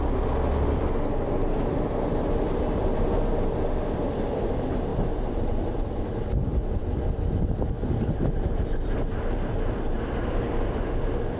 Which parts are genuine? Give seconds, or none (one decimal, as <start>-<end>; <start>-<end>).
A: 0.0-4.9; 5.8-11.4